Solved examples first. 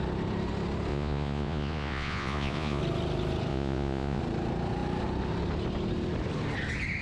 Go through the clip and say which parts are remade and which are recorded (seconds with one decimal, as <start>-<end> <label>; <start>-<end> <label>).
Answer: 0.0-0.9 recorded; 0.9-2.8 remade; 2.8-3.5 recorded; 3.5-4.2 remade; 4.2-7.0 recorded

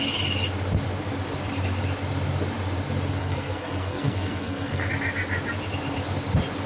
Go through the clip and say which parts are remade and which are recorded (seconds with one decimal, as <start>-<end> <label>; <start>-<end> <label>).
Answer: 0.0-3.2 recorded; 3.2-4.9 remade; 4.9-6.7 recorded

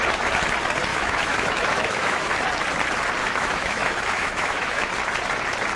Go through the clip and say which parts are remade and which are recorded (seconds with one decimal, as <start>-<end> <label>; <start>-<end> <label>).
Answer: 0.0-0.9 recorded; 0.9-2.3 remade; 2.3-3.2 recorded; 3.2-4.9 remade; 4.9-5.8 recorded

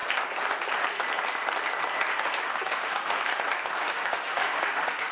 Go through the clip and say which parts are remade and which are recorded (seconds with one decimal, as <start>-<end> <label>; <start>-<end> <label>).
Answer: 0.0-2.1 recorded; 2.1-3.3 remade; 3.3-3.9 recorded; 3.9-5.1 remade